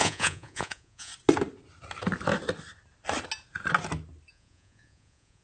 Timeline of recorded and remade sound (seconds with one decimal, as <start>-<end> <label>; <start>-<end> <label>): 0.0-1.1 remade; 1.1-4.3 recorded; 4.3-5.4 remade